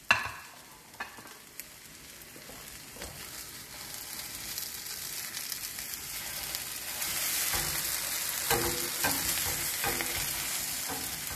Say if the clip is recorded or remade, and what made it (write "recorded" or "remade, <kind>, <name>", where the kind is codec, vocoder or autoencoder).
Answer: recorded